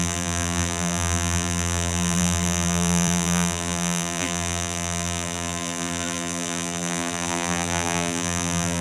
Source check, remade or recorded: remade